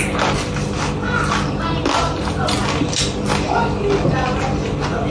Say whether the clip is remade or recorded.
recorded